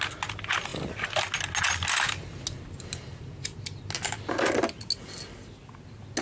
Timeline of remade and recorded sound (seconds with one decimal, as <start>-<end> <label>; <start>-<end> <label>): 0.0-6.2 recorded

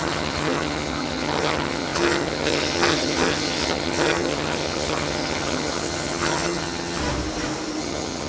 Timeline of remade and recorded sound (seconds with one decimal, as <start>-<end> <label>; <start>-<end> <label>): 0.0-7.0 remade; 7.0-7.8 recorded; 7.8-8.3 remade

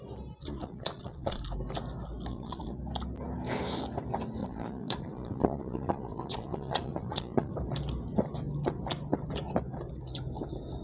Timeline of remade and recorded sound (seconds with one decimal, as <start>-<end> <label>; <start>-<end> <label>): 0.0-0.4 recorded; 0.4-1.4 remade; 1.4-2.3 recorded; 2.3-2.8 remade; 2.8-4.4 recorded; 4.4-7.5 remade; 7.5-10.8 recorded

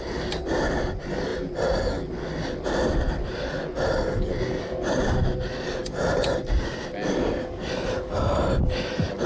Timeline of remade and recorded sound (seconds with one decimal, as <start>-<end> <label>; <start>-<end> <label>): 0.0-9.3 recorded

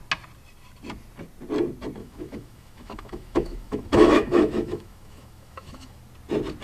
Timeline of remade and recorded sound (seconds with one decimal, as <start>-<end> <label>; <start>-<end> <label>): 0.0-2.0 recorded; 2.0-6.0 remade; 6.0-6.6 recorded

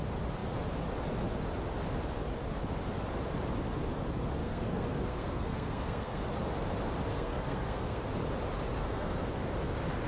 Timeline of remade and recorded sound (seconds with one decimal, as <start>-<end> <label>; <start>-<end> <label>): 0.0-4.4 recorded; 4.4-6.2 remade; 6.2-7.1 recorded; 7.1-8.0 remade; 8.0-8.8 recorded; 8.8-9.3 remade; 9.3-10.1 recorded